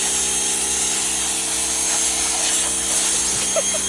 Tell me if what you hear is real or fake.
real